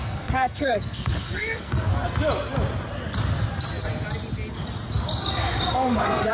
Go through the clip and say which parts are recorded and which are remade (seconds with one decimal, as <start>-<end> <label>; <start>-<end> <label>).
0.0-1.9 remade; 1.9-5.7 recorded; 5.7-6.3 remade